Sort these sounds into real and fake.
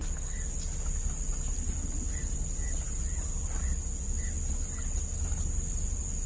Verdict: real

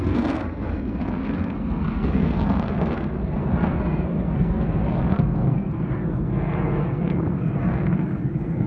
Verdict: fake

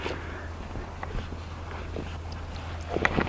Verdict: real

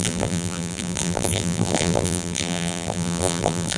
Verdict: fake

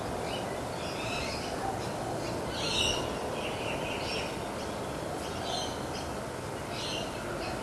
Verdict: real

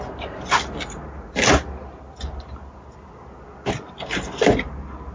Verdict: real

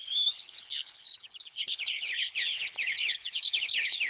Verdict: fake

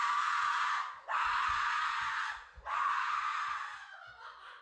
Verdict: fake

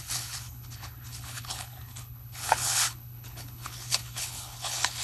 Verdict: fake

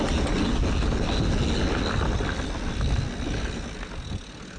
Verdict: real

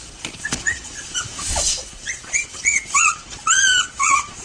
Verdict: fake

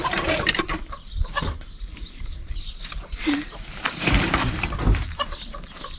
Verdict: fake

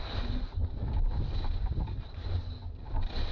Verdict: real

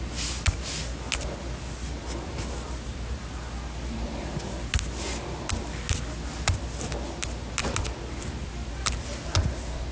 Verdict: real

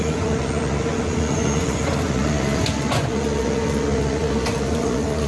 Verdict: fake